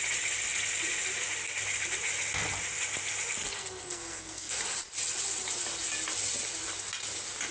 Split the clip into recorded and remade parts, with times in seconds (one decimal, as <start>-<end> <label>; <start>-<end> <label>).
0.0-3.6 recorded; 3.6-4.6 remade; 4.6-7.5 recorded